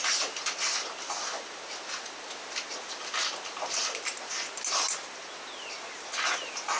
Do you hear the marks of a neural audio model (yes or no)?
no